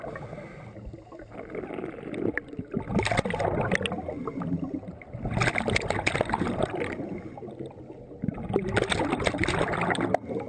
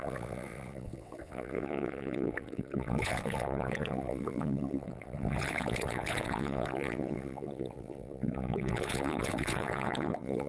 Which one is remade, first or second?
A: second